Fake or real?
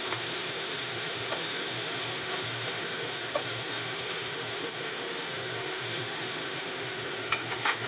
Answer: fake